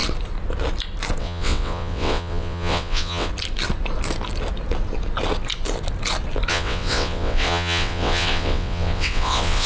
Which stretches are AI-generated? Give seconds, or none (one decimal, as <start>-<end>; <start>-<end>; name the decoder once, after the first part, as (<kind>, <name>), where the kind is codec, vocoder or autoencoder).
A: 1.2-3.3 (vocoder, WaveNeXt); 6.5-9.7